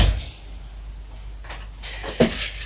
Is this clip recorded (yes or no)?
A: yes